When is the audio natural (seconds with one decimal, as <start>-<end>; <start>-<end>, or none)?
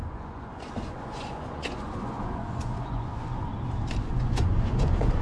3.5-4.0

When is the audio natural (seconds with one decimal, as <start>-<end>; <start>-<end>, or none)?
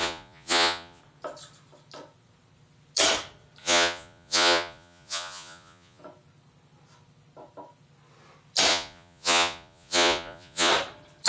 1.0-3.6; 6.0-8.7; 10.7-11.3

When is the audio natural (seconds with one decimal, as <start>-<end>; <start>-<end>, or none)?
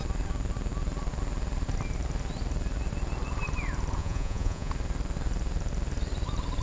0.0-4.0; 4.7-6.6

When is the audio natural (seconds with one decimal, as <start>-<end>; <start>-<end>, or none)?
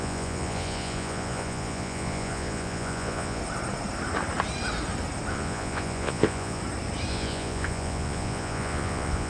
3.4-5.3; 6.6-7.1